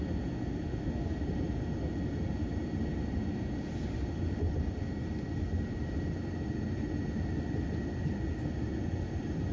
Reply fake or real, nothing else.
real